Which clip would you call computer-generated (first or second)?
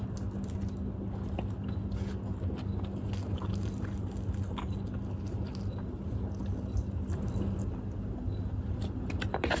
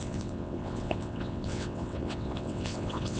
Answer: second